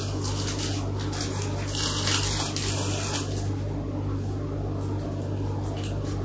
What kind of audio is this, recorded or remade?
recorded